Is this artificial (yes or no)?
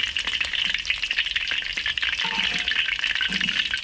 no